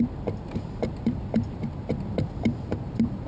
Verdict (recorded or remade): recorded